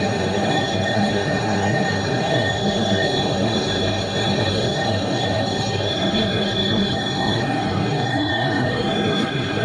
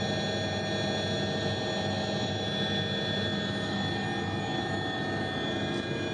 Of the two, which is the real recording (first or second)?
second